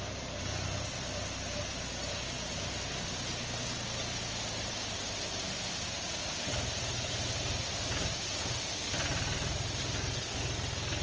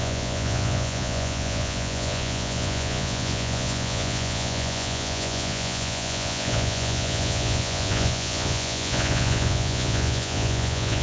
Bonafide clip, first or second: first